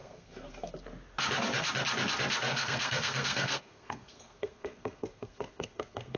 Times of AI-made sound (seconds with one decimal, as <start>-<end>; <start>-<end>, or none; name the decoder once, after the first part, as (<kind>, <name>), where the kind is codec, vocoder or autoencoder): 0.0-0.7 (codec, SNAC); 2.5-6.2